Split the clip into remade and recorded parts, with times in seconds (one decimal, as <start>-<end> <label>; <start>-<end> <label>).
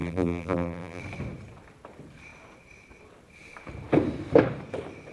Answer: 0.0-1.0 remade; 1.0-5.1 recorded